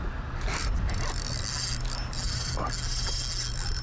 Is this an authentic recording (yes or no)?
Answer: yes